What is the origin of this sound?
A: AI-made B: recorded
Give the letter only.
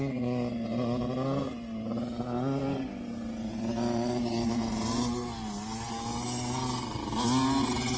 B